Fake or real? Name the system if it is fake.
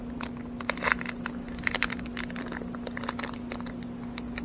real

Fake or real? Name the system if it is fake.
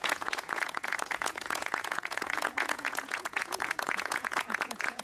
fake, vocoder, Vocos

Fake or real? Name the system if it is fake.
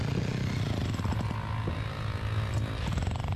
real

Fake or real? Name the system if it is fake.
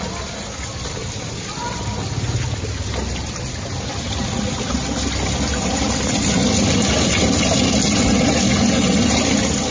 real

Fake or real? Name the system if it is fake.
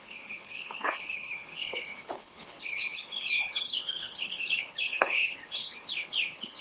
fake, codec, HILCodec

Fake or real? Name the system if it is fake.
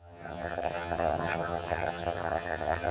fake, vocoder, HiFi-GAN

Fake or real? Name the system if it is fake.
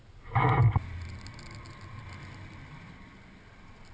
real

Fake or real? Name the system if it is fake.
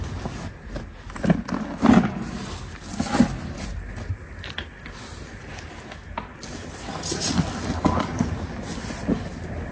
real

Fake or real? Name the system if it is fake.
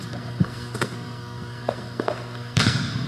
fake, codec, SNAC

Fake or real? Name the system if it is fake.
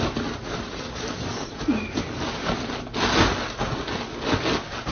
real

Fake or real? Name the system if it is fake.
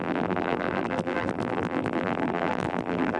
fake, vocoder, BigVGAN v2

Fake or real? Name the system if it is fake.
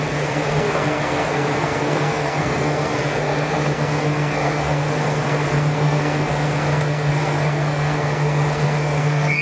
fake, codec, SNAC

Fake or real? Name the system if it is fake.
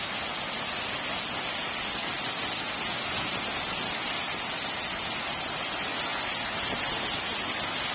real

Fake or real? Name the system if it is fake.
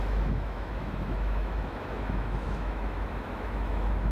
fake, autoencoder, DAC-VAE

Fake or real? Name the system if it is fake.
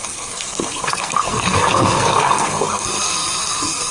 fake, codec, SNAC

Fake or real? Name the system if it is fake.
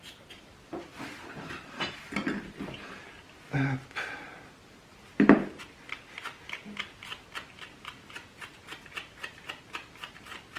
real